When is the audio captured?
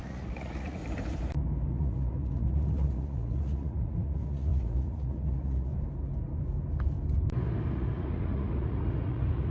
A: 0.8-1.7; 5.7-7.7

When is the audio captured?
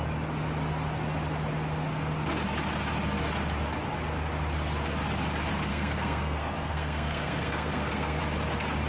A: 0.0-5.7; 8.2-8.9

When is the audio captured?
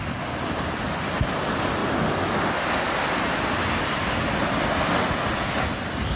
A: 0.0-6.2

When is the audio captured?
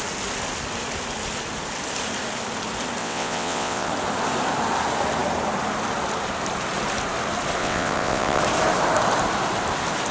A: 0.0-3.0; 3.9-7.6; 8.4-10.1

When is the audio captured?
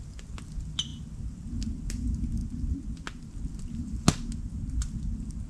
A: 0.0-5.5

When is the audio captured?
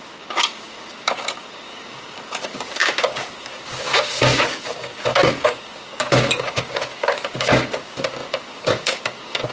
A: none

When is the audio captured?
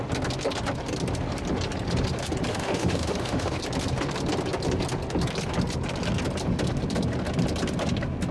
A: 0.0-2.5; 3.6-8.3